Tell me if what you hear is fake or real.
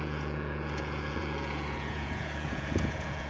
fake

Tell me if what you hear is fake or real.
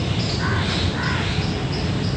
real